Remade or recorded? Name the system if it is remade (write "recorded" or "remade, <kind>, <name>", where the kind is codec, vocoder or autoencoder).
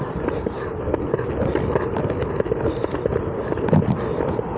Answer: recorded